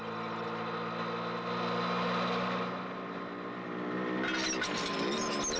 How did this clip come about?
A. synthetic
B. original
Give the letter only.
B